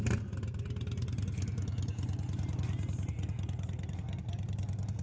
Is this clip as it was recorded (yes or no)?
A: yes